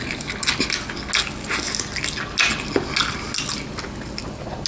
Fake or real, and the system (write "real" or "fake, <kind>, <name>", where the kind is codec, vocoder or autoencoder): real